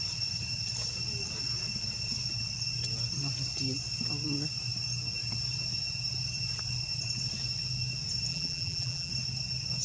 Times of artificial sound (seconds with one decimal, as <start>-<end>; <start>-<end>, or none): 8.3-9.1